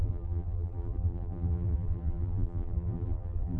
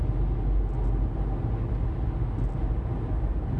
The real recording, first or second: second